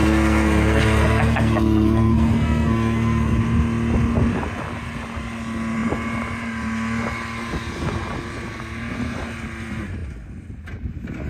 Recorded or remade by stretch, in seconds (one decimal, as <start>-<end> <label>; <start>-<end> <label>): 0.0-3.4 remade; 3.4-11.3 recorded

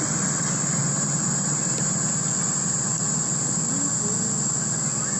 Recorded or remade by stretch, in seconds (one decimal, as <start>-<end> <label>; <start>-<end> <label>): 0.0-5.2 recorded

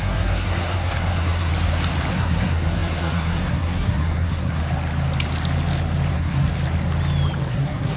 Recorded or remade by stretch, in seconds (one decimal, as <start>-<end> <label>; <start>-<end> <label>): 0.0-1.5 remade; 1.5-2.1 recorded; 2.1-4.6 remade; 4.6-6.1 recorded; 6.1-6.5 remade; 6.5-7.5 recorded; 7.5-8.0 remade

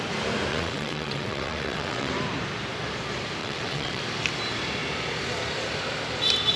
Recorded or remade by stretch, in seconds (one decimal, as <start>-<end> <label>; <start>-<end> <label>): 0.0-0.5 recorded; 0.5-2.1 remade; 2.1-3.4 recorded; 3.4-4.0 remade; 4.0-6.6 recorded

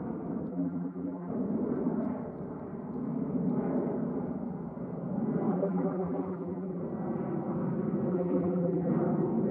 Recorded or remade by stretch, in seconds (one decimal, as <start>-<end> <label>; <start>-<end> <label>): 0.0-0.5 recorded; 0.5-1.3 remade; 1.3-5.5 recorded; 5.5-6.8 remade; 6.8-8.1 recorded; 8.1-8.9 remade; 8.9-9.5 recorded

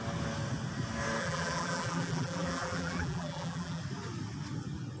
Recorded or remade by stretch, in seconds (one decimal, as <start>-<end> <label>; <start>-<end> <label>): 0.0-1.2 recorded; 1.2-3.8 remade; 3.8-5.0 recorded